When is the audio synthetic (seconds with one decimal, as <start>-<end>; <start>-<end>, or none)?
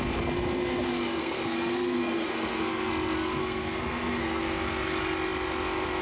1.2-2.9; 3.4-4.4